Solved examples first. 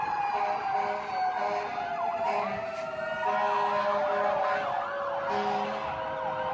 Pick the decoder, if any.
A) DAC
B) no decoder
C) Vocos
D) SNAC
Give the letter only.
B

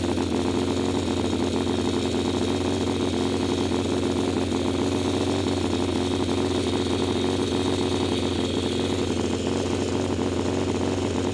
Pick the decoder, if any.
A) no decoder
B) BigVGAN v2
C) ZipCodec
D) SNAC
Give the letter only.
A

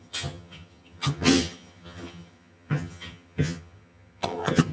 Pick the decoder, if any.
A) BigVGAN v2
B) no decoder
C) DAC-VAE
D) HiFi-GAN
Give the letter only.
D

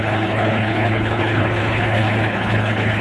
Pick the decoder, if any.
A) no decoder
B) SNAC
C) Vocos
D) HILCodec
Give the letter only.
D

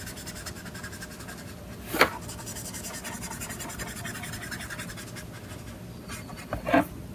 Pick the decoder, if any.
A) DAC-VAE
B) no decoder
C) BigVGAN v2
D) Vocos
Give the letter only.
B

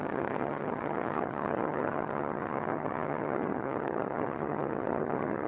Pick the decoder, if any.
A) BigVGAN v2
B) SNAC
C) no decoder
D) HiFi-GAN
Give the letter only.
D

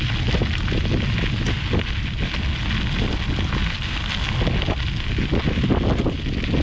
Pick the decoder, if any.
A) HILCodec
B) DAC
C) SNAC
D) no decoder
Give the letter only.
D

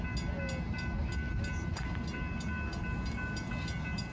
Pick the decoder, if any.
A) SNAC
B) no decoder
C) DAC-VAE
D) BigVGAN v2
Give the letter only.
B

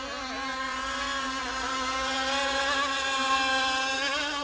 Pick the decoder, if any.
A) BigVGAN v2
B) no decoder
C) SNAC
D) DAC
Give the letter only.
B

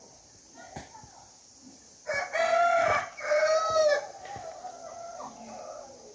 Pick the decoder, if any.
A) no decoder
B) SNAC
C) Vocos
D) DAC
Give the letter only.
A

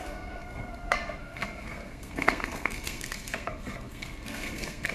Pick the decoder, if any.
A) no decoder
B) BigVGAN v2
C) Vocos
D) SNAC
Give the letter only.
D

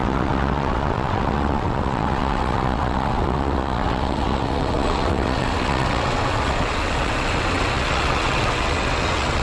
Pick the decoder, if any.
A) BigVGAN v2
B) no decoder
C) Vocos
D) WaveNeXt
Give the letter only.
D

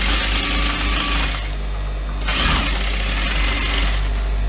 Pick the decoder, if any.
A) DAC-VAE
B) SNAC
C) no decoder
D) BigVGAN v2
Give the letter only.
C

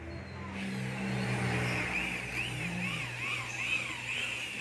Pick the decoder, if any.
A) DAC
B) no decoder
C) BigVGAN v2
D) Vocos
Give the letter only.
B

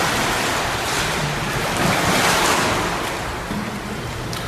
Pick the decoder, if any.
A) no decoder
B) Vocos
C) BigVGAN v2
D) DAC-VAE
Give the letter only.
A